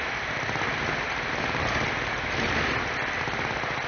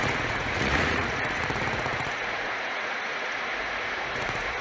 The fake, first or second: second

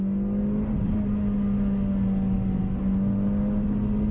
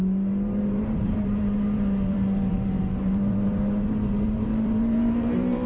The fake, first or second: second